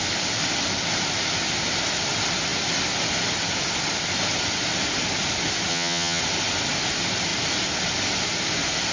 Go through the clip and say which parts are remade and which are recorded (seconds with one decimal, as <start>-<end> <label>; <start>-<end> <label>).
0.0-5.7 recorded; 5.7-6.2 remade; 6.2-8.9 recorded